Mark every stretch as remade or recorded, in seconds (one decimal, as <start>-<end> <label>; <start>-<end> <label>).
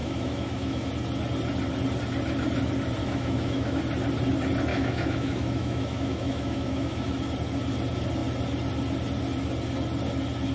0.0-0.9 remade; 0.9-3.0 recorded; 3.0-3.8 remade; 3.8-4.7 recorded; 4.7-7.2 remade; 7.2-10.5 recorded